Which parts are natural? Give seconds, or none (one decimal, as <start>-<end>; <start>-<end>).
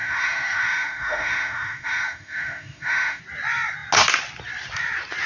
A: 3.2-5.3